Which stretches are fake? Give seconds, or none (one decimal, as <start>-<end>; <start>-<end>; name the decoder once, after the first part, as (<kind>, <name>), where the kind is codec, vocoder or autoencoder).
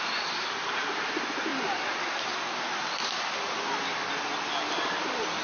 none